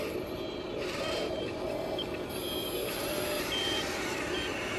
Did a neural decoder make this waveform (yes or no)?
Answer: no